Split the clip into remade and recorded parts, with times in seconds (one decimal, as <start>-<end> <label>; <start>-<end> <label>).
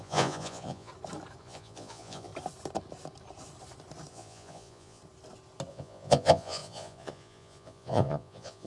0.0-0.9 remade; 0.9-1.4 recorded; 1.4-2.3 remade; 2.3-4.1 recorded; 4.1-5.0 remade; 5.0-5.7 recorded; 5.7-8.7 remade